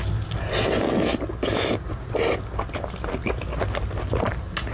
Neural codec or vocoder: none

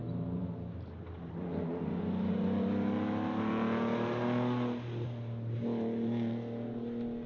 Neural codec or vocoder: none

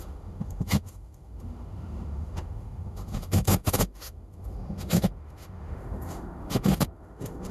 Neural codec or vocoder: autoencoder, DAC-VAE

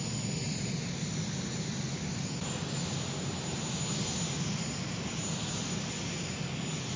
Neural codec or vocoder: none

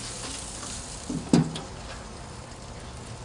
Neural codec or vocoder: none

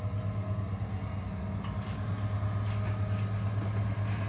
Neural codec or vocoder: none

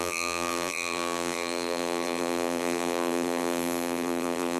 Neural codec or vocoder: vocoder, BigVGAN v2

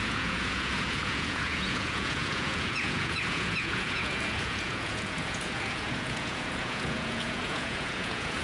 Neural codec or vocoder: vocoder, Vocos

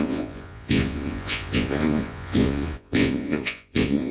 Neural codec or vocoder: vocoder, Vocos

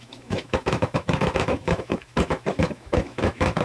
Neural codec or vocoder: autoencoder, DAC-VAE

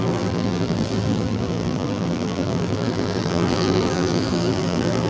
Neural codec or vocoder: vocoder, BigVGAN v2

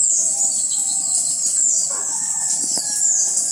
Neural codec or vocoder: none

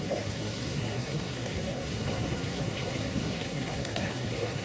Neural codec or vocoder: codec, SNAC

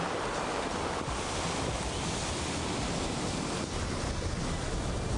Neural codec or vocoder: none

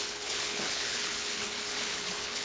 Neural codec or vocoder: codec, HILCodec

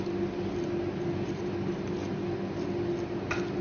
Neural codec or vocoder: none